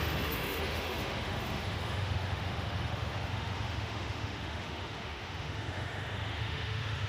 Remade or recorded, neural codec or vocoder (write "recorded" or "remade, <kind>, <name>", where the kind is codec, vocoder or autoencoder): remade, autoencoder, DAC-VAE